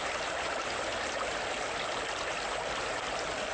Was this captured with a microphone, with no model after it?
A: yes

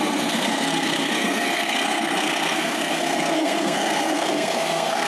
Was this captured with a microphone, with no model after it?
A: no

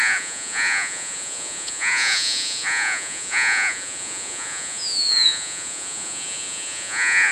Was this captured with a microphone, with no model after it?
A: no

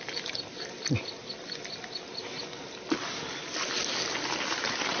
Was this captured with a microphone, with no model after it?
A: yes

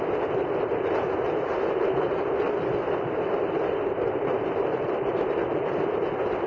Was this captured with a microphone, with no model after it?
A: yes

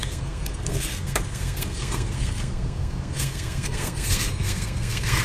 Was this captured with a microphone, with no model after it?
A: no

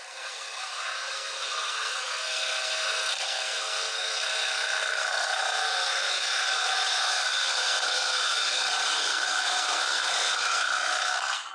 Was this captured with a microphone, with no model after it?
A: no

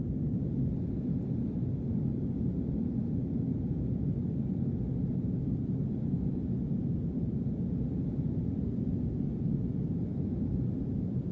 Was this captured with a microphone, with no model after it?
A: yes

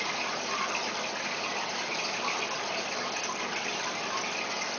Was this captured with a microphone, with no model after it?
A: yes